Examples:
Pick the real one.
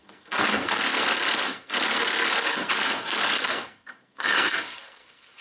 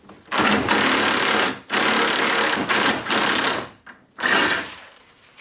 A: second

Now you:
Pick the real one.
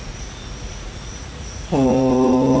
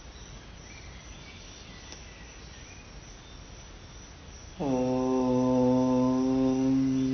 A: second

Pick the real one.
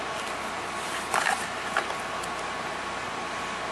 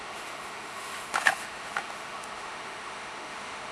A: first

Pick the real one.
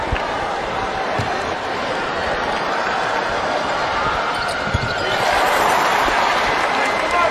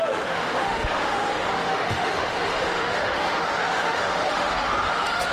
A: first